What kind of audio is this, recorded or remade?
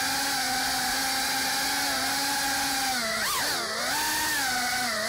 recorded